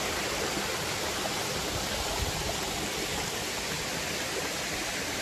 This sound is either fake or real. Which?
real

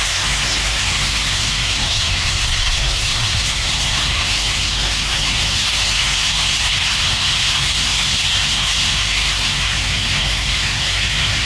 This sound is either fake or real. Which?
fake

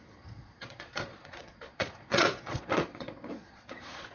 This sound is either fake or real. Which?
fake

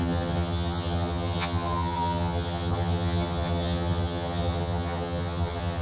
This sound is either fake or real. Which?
fake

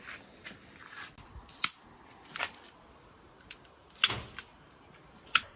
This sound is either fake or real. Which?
real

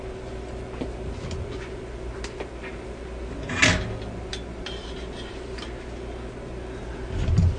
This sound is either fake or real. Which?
real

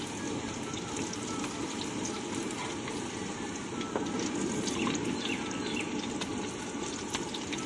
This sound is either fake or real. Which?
real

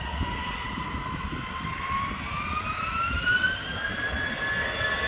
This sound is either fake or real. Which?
real